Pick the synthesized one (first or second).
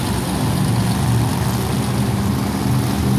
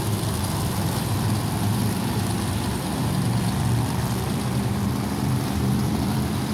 second